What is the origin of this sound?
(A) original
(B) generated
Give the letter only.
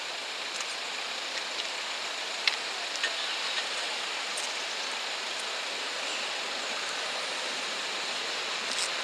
A